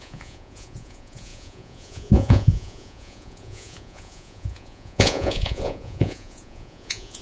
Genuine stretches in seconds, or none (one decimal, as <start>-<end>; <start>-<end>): none